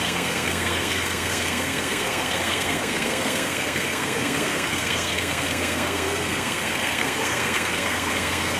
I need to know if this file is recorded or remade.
remade